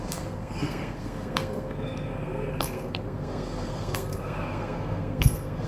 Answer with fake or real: fake